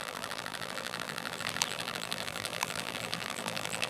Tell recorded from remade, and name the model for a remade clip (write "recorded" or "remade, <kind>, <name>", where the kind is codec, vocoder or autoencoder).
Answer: remade, vocoder, BigVGAN v2